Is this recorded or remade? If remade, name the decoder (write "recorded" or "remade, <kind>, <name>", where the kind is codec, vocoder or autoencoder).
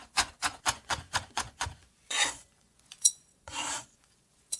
remade, vocoder, Vocos